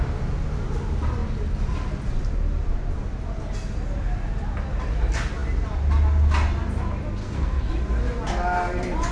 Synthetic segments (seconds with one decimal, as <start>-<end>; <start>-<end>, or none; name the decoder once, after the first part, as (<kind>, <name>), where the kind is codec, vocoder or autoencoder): 7.2-7.7 (codec, SNAC)